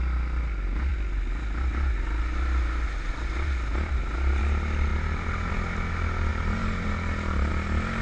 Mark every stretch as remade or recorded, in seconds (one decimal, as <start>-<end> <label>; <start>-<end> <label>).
0.0-8.0 recorded